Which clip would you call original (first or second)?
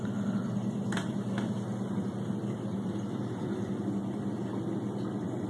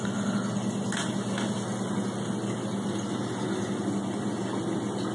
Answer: second